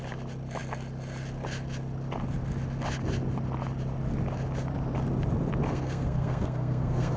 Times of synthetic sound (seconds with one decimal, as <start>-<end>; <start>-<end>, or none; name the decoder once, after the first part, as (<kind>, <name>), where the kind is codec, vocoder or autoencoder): 5.7-7.2 (codec, SNAC)